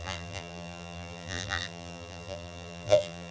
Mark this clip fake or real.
fake